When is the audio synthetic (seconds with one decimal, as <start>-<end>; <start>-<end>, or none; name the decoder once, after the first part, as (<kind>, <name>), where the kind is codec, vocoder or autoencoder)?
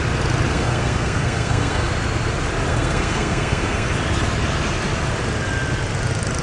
0.5-1.9 (codec, SNAC); 2.7-3.9